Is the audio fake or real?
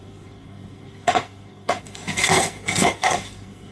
fake